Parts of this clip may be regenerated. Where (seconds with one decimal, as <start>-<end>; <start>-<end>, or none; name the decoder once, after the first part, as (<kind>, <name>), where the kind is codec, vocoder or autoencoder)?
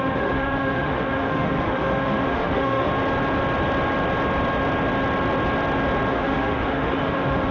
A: 0.0-2.9 (autoencoder, DAC-VAE); 6.1-7.5